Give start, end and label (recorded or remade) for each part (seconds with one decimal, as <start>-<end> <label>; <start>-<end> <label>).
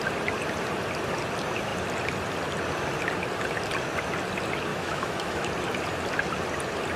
0.0-4.7 recorded; 4.7-5.5 remade; 5.5-7.0 recorded